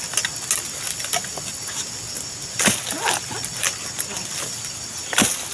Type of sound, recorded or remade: recorded